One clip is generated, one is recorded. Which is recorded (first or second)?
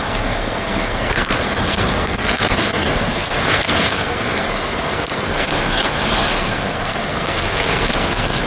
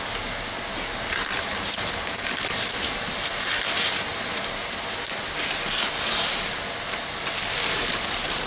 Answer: second